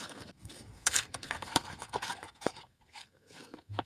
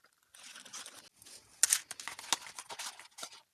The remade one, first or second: first